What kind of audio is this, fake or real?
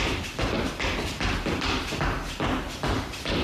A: real